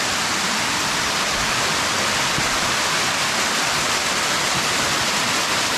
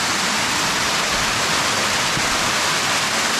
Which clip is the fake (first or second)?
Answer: first